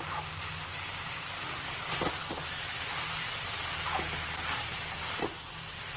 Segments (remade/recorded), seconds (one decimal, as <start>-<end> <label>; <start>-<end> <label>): 0.0-0.7 recorded; 0.7-2.2 remade; 2.2-6.0 recorded